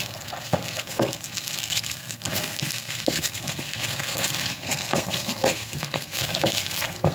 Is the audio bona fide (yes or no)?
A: no